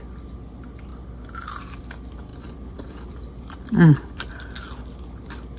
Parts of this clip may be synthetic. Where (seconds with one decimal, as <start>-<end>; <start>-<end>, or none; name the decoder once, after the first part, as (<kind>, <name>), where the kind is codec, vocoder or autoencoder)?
2.3-4.3 (vocoder, BigVGAN v2)